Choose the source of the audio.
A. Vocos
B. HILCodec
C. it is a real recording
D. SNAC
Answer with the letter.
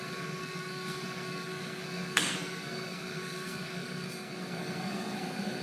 D